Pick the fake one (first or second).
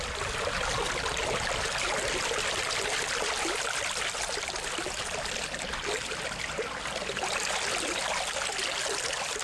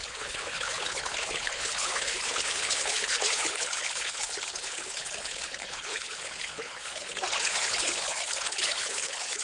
second